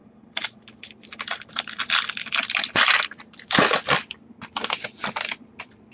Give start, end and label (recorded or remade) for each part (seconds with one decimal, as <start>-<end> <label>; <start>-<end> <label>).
0.0-2.7 recorded; 2.7-5.9 remade